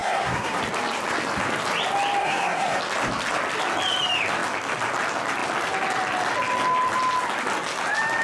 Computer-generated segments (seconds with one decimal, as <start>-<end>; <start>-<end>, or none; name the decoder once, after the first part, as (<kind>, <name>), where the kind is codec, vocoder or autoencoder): 0.0-0.6 (codec, SNAC); 2.2-2.8